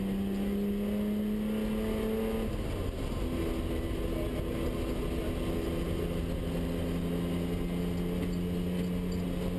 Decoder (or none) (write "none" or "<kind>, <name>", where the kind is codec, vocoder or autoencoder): none